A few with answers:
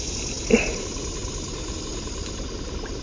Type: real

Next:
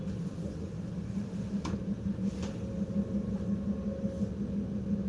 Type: real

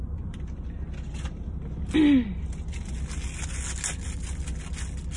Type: real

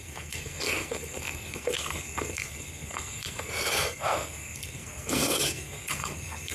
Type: fake